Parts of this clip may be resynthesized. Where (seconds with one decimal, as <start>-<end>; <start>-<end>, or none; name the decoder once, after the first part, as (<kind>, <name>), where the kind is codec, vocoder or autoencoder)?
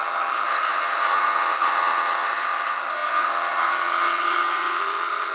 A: 0.0-5.3 (vocoder, HiFi-GAN)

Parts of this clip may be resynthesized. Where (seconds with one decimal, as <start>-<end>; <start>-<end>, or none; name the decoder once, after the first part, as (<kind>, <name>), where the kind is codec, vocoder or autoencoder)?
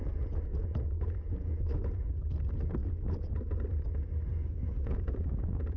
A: 0.0-2.1 (vocoder, Vocos); 2.8-3.4; 4.3-5.8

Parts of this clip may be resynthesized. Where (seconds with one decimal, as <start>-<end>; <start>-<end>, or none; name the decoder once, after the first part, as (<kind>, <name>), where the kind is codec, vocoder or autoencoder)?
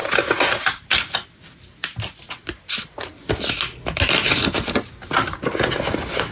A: none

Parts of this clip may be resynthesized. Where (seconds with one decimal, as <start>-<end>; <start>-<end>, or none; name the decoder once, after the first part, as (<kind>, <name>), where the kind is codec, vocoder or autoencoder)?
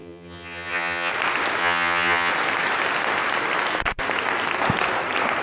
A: 0.0-1.1 (vocoder, HiFi-GAN); 1.6-2.3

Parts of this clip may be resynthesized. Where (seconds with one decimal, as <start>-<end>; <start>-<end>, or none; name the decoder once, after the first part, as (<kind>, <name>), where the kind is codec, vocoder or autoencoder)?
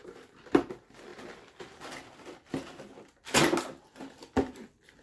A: none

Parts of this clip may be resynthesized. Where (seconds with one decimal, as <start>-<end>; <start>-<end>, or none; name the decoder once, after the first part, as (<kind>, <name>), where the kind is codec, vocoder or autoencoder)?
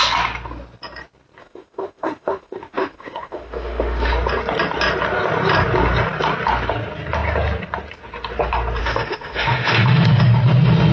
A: 1.4-4.1 (autoencoder, DAC-VAE); 8.8-10.2